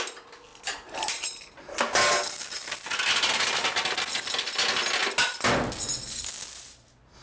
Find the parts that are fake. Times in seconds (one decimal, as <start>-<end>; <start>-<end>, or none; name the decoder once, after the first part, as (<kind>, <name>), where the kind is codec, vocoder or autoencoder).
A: none